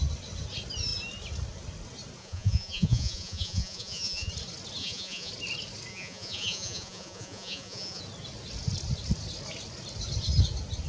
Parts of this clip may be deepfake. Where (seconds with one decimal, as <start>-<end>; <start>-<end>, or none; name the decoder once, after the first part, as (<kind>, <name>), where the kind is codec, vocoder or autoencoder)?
2.2-4.3 (vocoder, Vocos); 4.8-5.3; 5.9-8.0